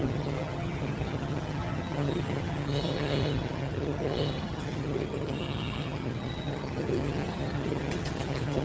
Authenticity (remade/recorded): remade